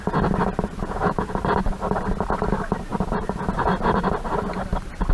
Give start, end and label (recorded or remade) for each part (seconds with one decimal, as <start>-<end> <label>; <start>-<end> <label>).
0.0-5.1 recorded